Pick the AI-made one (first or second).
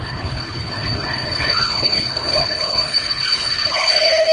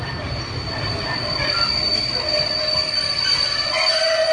first